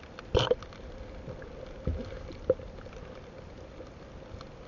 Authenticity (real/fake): real